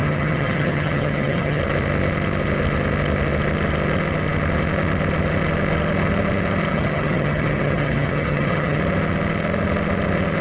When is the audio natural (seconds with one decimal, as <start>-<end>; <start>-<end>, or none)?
1.6-6.7; 8.8-10.4